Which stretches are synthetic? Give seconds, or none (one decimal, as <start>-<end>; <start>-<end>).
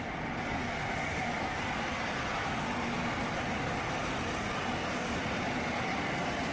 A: none